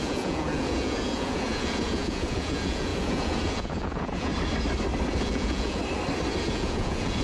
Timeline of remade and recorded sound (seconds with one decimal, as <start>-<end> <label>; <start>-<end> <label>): 0.0-4.3 remade; 4.3-5.1 recorded; 5.1-5.8 remade; 5.8-6.4 recorded; 6.4-7.2 remade